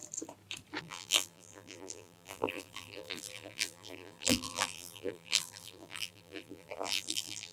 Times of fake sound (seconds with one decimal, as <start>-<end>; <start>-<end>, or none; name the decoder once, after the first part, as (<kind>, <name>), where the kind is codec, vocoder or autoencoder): 0.8-7.5 (vocoder, BigVGAN v2)